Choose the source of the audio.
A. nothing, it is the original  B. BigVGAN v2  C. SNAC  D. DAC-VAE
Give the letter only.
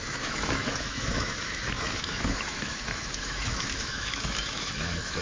D